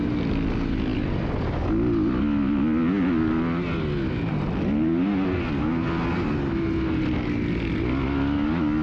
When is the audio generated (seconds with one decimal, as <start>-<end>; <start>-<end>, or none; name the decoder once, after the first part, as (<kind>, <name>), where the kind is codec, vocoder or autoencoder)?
none